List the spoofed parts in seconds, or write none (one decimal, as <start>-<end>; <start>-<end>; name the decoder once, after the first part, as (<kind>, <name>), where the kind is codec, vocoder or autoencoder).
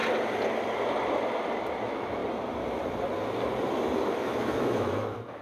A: 1.8-2.2 (autoencoder, DAC-VAE); 4.1-5.4